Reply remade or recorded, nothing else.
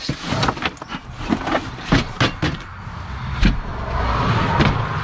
recorded